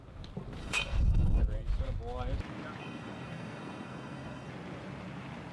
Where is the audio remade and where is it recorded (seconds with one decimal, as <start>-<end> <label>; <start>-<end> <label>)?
0.0-0.6 recorded; 0.6-1.4 remade; 1.4-2.8 recorded; 2.8-4.5 remade; 4.5-5.5 recorded